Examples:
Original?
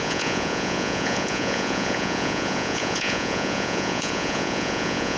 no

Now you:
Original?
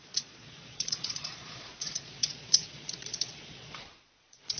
no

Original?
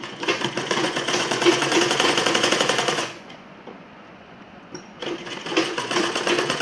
no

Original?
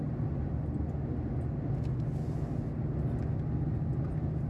yes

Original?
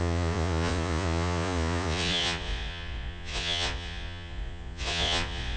no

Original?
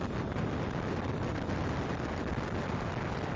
yes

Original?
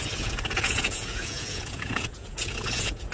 no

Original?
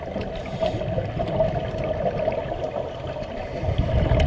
yes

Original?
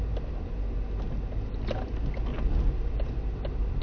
yes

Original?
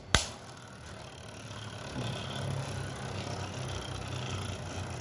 yes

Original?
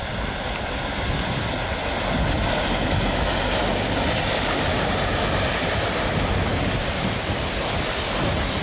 yes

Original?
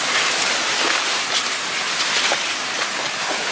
yes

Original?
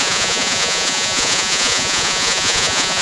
no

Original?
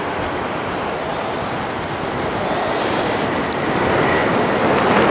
yes